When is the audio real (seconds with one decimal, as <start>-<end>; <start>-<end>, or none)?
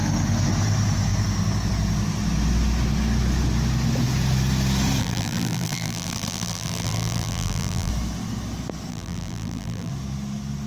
0.0-5.0; 7.9-8.9; 9.9-10.7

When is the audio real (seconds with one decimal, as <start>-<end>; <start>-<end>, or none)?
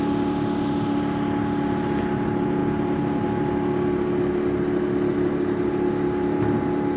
0.0-7.0